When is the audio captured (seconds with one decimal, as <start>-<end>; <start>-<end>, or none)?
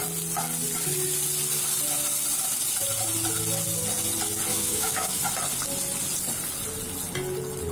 0.0-4.5; 5.2-7.7